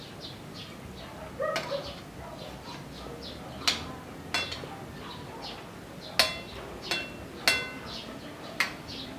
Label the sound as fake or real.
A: real